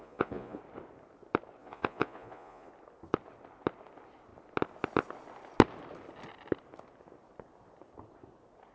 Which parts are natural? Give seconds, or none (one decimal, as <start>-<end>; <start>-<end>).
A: 0.6-1.6; 2.7-8.7